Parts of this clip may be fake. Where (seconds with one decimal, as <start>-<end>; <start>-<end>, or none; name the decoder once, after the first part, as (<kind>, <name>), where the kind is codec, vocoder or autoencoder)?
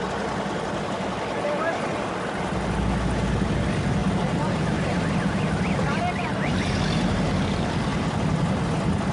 none